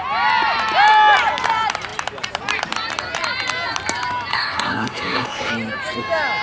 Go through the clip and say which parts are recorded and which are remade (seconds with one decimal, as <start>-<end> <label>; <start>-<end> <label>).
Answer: 0.0-4.3 recorded; 4.3-5.5 remade; 5.5-6.4 recorded